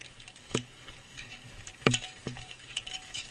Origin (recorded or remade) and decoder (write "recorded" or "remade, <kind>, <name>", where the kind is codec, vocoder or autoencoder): remade, codec, DAC